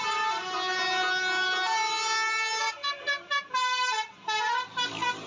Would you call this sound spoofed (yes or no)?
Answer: yes